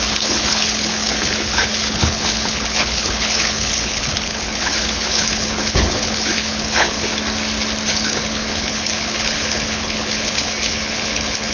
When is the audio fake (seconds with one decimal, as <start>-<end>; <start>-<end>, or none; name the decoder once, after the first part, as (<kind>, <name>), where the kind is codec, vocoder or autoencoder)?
0.0-7.1 (codec, HILCodec); 7.9-11.5